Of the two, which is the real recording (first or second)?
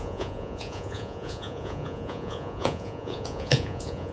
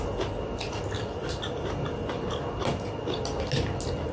second